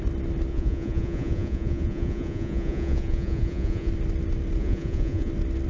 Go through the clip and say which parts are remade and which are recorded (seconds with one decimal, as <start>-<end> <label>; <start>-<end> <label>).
0.0-0.5 recorded; 0.5-3.9 remade; 3.9-4.6 recorded; 4.6-5.3 remade; 5.3-5.7 recorded